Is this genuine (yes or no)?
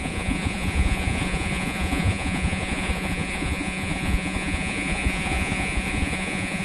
no